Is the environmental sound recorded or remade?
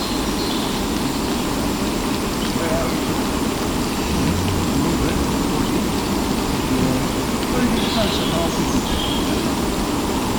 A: recorded